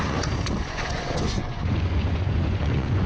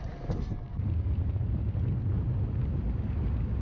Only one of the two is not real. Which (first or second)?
first